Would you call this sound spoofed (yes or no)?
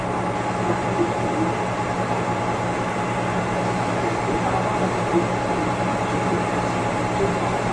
no